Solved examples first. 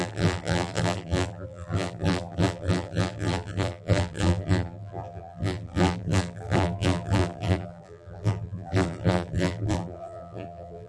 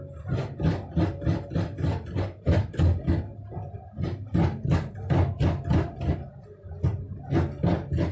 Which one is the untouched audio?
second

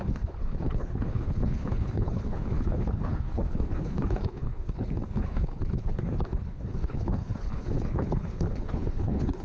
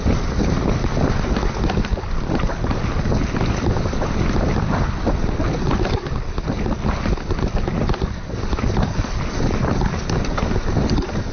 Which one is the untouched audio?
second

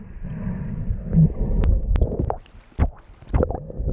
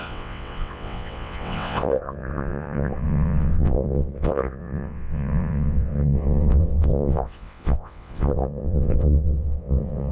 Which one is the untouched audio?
first